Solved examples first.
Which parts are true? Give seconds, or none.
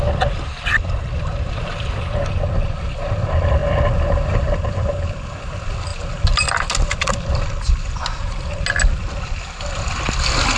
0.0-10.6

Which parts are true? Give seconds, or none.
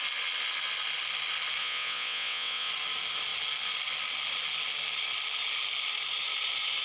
0.0-1.6; 2.7-6.8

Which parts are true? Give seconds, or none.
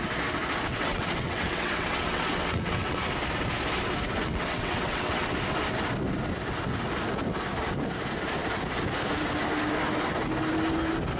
0.0-0.7; 3.0-4.2; 5.4-11.2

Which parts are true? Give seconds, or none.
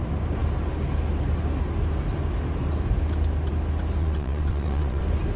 0.0-4.0; 5.0-5.4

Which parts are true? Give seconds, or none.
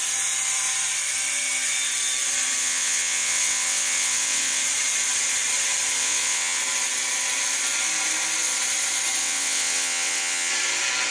0.0-2.6; 4.6-6.0; 6.6-9.2; 10.5-11.1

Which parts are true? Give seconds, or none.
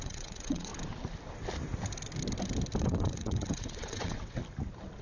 0.7-2.8; 4.4-5.0